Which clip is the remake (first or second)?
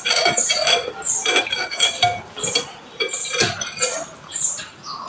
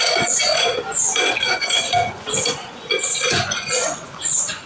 second